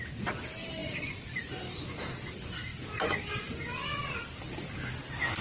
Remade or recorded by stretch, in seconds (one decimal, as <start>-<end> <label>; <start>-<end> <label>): 0.0-5.4 recorded